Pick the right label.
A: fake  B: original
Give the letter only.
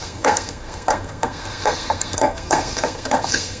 A